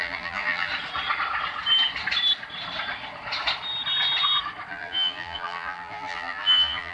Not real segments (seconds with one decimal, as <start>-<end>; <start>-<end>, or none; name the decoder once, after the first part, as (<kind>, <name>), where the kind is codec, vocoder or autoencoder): 0.0-0.7 (vocoder, BigVGAN v2); 4.7-6.9

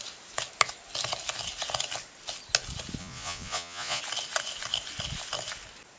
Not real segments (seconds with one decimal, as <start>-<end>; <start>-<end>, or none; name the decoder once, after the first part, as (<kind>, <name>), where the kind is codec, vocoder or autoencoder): 3.0-4.0 (vocoder, Vocos)

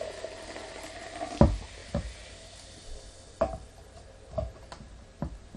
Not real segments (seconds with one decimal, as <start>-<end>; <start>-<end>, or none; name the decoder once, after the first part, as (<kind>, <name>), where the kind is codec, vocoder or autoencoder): none